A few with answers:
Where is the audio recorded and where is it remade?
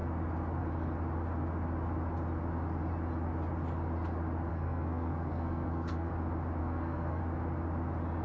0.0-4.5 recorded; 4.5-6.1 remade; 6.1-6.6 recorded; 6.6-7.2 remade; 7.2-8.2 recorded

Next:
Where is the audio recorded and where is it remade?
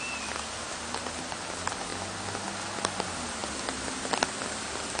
0.0-5.0 recorded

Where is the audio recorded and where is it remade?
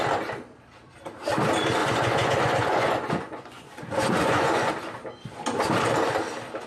0.0-1.8 recorded; 1.8-4.7 remade; 4.7-6.7 recorded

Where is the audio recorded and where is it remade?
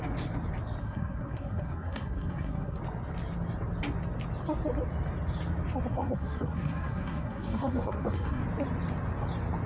0.0-0.8 recorded; 0.8-2.8 remade; 2.8-5.9 recorded; 5.9-8.4 remade; 8.4-9.7 recorded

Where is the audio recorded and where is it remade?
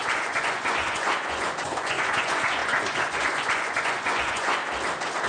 0.0-4.6 remade; 4.6-5.3 recorded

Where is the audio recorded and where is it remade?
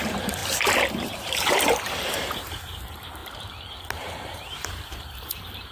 0.0-0.4 remade; 0.4-1.1 recorded; 1.1-3.2 remade; 3.2-4.0 recorded; 4.0-5.7 remade